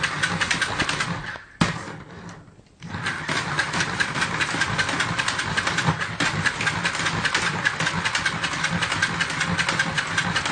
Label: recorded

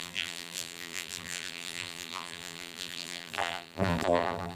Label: remade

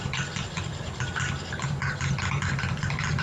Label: remade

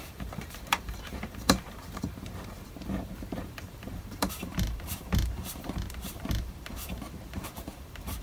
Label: remade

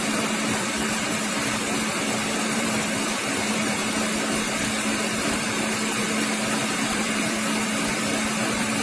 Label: remade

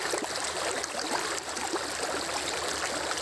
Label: recorded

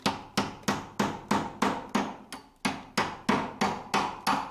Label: recorded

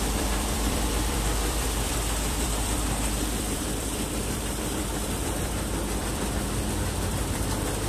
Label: remade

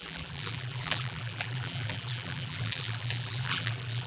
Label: remade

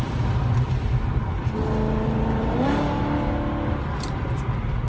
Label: recorded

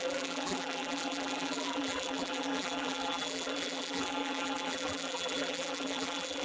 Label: remade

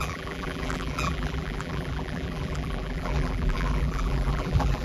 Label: remade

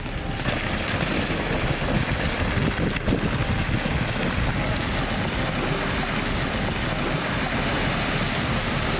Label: recorded